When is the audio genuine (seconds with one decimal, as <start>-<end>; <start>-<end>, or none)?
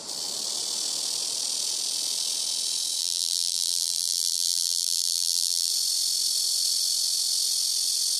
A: 0.0-3.0; 5.7-8.2